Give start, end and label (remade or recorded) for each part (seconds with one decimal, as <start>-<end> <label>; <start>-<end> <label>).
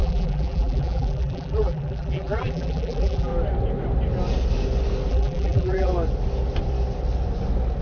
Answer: 0.0-3.3 remade; 3.3-5.1 recorded; 5.1-5.9 remade; 5.9-7.8 recorded